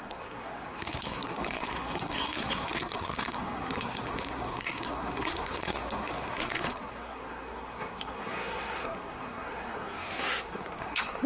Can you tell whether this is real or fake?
fake